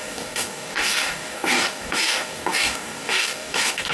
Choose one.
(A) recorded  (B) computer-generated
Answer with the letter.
B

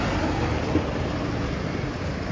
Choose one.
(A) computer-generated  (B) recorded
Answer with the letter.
B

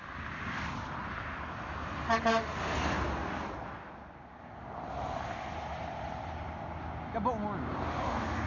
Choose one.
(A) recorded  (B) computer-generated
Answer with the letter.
A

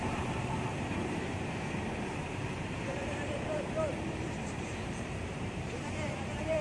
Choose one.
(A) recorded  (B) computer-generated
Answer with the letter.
B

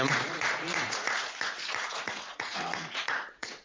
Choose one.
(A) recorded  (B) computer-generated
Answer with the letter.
B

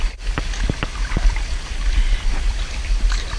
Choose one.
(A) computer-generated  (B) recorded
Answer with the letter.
A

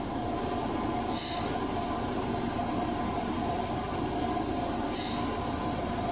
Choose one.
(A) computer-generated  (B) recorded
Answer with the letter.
B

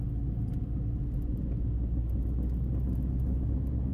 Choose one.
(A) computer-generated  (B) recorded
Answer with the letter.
B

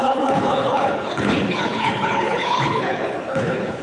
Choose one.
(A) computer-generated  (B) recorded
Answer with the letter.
A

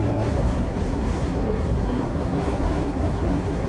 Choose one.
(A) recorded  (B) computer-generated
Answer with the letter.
B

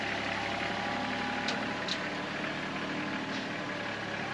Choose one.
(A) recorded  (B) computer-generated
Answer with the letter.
A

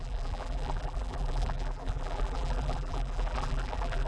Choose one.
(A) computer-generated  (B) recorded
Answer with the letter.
A